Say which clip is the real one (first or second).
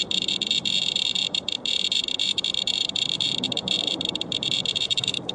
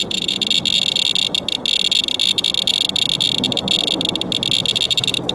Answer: second